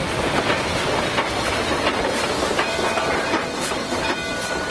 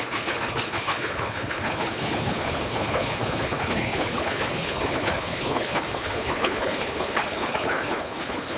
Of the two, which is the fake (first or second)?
second